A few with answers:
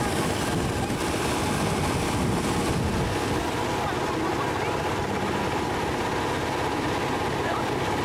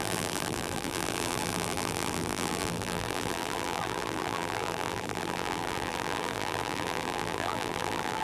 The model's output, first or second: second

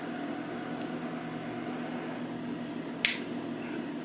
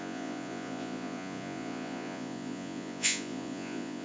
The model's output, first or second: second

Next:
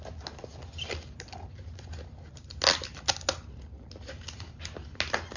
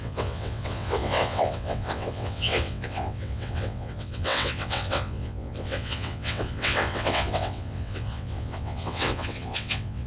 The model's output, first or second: second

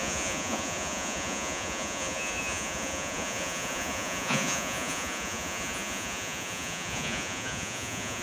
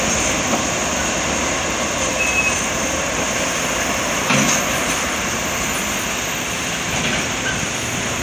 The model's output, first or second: first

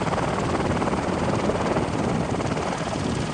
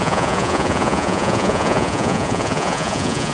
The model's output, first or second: second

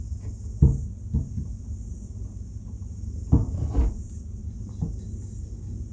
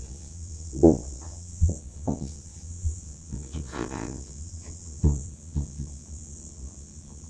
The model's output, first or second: second